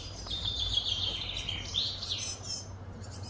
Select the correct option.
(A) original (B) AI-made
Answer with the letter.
B